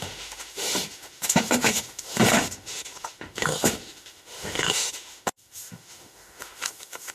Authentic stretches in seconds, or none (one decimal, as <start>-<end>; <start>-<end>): none